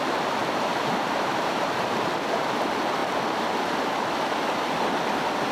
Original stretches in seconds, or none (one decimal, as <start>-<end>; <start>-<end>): 0.0-0.4; 2.1-5.5